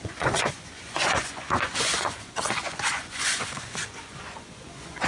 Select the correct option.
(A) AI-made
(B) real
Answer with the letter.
A